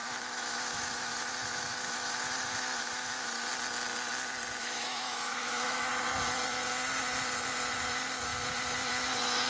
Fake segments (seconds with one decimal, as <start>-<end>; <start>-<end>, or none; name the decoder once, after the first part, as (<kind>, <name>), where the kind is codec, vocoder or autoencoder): 0.0-3.5 (autoencoder, DAC-VAE); 4.6-5.9